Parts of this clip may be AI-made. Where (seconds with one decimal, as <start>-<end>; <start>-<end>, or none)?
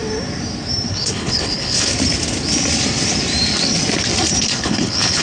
0.9-1.9; 4.4-5.2